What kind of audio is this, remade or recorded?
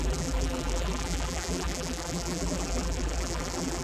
remade